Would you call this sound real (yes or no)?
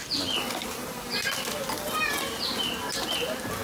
yes